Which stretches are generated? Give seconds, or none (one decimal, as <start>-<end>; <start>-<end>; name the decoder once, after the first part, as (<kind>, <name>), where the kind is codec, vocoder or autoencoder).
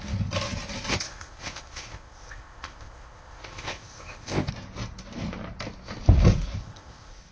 0.9-4.5 (codec, ZipCodec); 6.6-7.3